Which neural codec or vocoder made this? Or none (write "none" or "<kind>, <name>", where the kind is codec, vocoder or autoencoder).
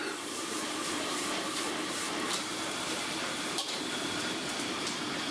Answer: vocoder, BigVGAN v2